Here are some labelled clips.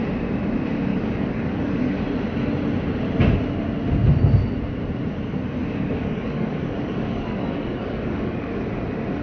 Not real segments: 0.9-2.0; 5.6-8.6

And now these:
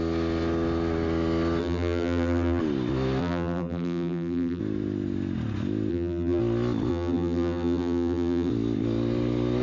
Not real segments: 1.6-2.6; 3.2-4.6; 5.9-6.4; 6.9-8.5

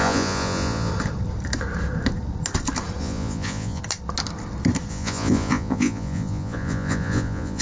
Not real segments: 0.0-0.9; 3.0-3.8; 4.9-7.6

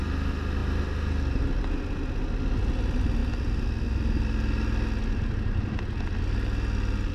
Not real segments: none

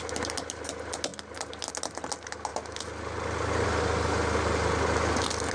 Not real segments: none

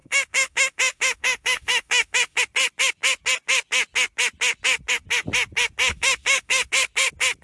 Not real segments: 0.0-2.4; 5.9-6.7